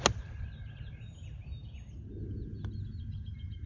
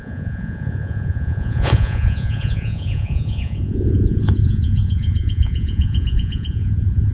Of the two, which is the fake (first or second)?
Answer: second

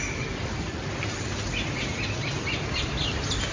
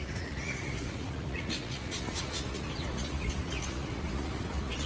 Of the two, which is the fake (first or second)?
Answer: second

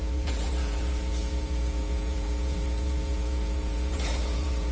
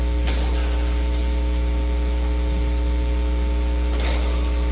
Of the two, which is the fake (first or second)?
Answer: first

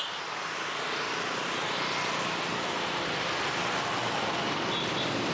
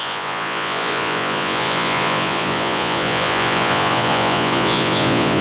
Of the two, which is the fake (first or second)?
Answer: second